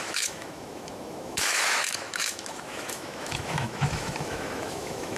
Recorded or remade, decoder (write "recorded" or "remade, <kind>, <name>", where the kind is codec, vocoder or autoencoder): remade, autoencoder, DAC-VAE